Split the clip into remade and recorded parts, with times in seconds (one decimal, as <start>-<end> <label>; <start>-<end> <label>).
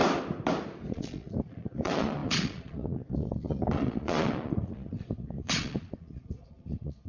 0.0-0.9 recorded; 0.9-7.1 remade